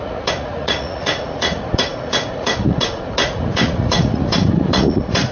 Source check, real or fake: fake